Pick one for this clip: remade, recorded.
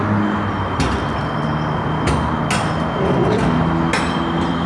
recorded